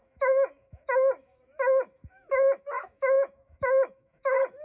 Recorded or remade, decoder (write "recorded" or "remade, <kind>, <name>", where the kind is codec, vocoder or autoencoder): remade, autoencoder, DAC-VAE